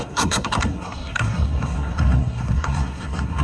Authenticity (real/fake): fake